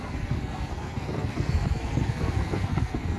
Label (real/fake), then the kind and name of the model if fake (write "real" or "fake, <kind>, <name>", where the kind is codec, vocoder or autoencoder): fake, codec, SNAC